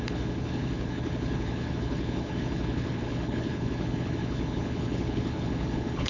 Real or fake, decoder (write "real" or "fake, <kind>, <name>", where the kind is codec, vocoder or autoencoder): fake, codec, HILCodec